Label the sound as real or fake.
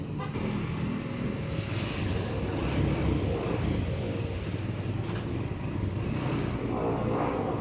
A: real